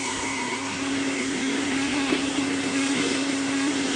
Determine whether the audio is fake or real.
fake